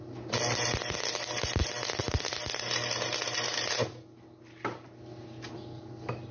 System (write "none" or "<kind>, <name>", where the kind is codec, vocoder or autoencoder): none